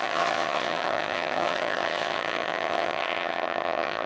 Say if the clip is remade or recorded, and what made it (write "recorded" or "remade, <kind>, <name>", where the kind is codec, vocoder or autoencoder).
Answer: remade, vocoder, HiFi-GAN